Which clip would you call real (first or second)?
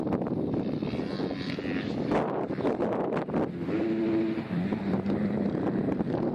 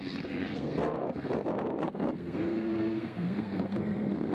first